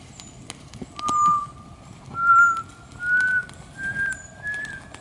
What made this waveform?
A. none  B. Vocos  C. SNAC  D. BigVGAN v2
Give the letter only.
A